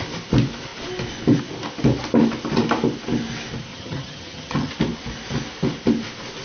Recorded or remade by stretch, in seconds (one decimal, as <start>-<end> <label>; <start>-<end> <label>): 0.0-3.7 recorded; 3.7-4.7 remade; 4.7-6.4 recorded